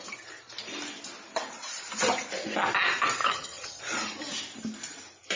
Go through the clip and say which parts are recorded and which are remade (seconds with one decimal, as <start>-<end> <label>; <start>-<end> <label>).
0.0-3.2 recorded; 3.2-3.8 remade; 3.8-5.4 recorded